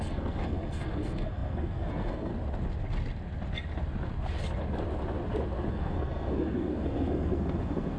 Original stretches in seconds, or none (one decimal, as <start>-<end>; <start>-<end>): 2.3-5.7